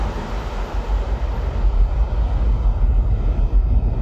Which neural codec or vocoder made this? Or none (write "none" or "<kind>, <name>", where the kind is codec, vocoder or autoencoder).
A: none